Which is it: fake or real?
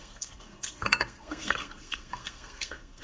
fake